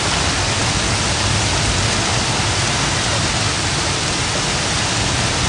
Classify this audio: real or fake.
real